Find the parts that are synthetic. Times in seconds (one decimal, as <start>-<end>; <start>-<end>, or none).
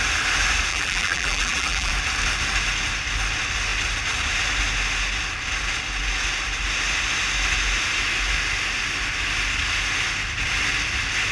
0.7-1.9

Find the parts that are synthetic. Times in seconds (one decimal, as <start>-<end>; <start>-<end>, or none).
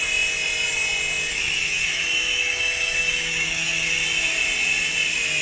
1.3-3.9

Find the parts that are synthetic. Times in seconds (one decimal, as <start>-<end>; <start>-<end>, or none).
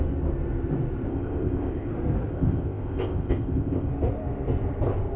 1.1-1.9; 2.3-3.9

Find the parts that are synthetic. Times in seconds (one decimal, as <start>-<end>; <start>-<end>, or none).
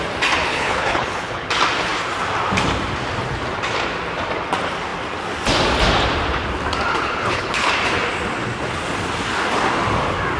0.5-1.5; 6.9-7.7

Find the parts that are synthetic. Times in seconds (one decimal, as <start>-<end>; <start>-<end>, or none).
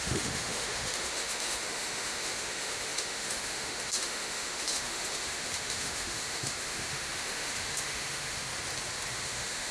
0.0-8.5; 9.1-9.7